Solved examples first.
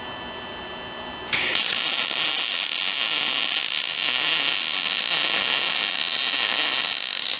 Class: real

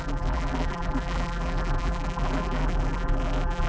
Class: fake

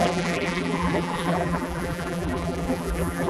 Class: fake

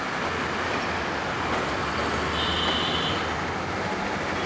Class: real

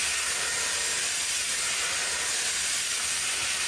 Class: real